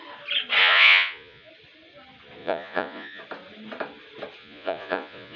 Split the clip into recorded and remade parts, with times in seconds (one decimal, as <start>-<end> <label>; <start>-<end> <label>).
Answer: 0.0-0.6 recorded; 0.6-1.5 remade; 1.5-2.4 recorded; 2.4-3.2 remade; 3.2-4.4 recorded; 4.4-5.4 remade